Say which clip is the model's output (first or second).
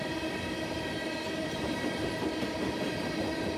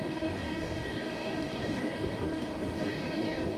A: second